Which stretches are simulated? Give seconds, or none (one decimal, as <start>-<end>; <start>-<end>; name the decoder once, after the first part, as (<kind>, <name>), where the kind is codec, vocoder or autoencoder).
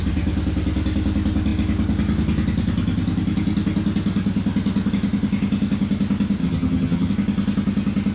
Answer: 6.4-7.1 (vocoder, HiFi-GAN)